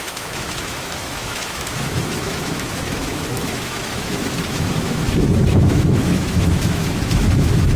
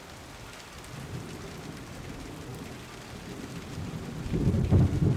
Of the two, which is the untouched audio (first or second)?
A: second